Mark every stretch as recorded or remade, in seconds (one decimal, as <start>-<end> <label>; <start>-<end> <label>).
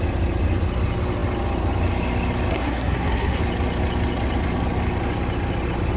0.0-2.5 recorded; 2.5-3.4 remade; 3.4-6.0 recorded